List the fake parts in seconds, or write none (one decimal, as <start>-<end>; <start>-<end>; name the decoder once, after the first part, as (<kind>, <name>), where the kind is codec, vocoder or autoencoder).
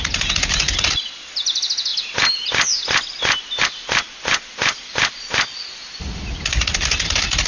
none